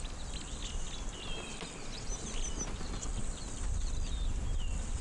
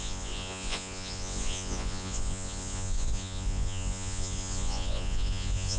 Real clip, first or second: first